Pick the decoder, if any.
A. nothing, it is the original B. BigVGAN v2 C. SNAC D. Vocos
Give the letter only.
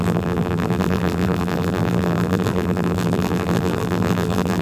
B